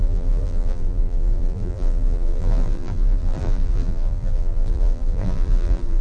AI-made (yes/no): yes